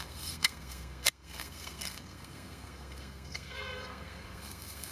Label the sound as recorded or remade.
remade